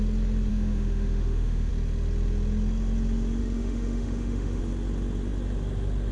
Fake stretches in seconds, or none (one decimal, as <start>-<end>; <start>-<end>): 0.5-1.7; 3.4-4.6